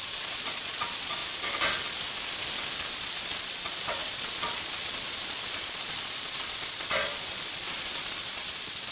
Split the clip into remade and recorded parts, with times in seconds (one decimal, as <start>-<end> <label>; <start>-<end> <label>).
0.0-1.2 remade; 1.2-2.9 recorded; 2.9-8.9 remade